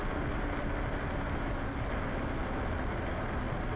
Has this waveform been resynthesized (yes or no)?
no